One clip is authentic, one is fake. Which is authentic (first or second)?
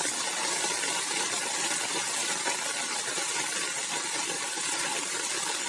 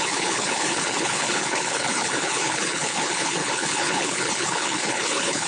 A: first